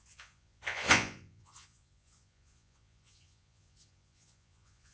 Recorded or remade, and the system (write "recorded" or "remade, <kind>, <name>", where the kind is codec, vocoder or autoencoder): remade, vocoder, Vocos